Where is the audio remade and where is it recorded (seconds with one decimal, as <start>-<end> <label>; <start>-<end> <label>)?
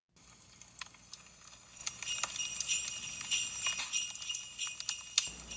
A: 0.0-5.6 recorded